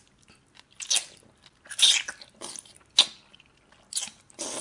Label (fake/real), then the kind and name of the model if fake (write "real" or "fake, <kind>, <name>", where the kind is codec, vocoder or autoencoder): real